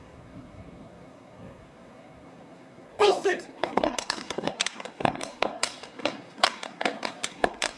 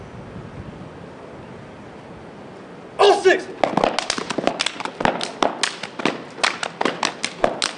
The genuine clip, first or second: second